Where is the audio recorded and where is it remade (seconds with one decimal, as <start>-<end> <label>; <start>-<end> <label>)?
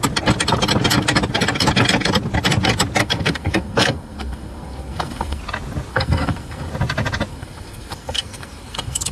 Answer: 0.0-3.0 recorded; 3.0-5.4 remade; 5.4-5.9 recorded; 5.9-6.7 remade; 6.7-7.3 recorded; 7.3-9.1 remade